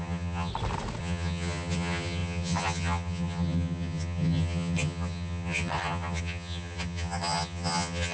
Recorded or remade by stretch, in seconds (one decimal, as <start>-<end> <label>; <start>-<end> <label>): 0.0-0.5 remade; 0.5-1.0 recorded; 1.0-8.1 remade